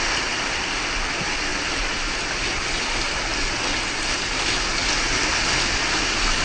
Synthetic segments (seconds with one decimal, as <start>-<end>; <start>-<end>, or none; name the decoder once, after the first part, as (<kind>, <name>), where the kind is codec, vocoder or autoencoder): none

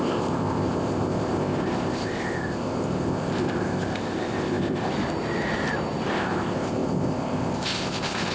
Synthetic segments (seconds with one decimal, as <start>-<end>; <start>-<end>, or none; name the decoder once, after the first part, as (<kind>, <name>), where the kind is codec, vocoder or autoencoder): 0.0-4.9 (codec, ZipCodec); 6.1-8.3

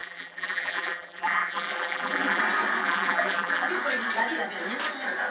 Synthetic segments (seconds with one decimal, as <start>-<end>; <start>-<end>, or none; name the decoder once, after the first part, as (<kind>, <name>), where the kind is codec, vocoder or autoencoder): 0.0-2.4 (vocoder, BigVGAN v2); 2.8-3.7

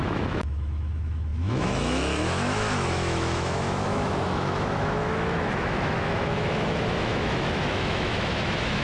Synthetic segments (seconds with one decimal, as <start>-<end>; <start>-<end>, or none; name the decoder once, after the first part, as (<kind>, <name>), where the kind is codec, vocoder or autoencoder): 0.0-8.8 (autoencoder, DAC-VAE)